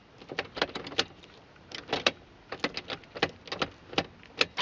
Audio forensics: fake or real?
real